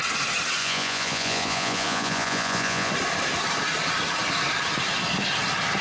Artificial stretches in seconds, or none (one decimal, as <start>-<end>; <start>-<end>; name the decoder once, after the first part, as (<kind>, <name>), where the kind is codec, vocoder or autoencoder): 0.6-2.9 (vocoder, Vocos)